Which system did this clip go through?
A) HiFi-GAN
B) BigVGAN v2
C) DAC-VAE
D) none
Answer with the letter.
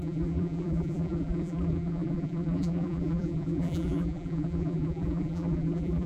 B